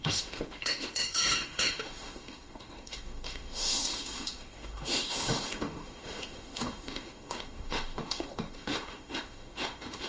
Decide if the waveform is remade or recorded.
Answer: remade